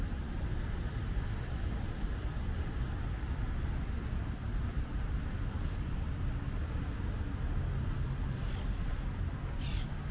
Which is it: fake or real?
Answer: real